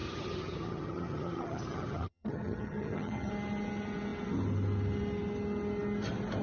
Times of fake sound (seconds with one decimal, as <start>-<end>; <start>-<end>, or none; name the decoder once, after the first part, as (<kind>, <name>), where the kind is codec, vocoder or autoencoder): 0.0-3.3 (vocoder, HiFi-GAN)